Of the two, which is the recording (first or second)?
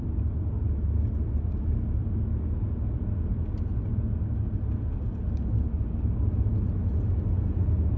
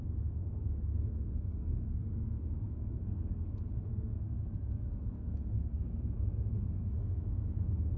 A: first